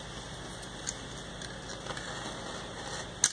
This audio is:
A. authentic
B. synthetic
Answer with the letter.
A